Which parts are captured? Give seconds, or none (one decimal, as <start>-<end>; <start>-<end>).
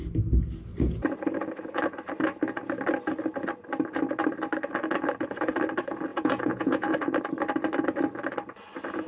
0.0-6.1; 6.9-9.1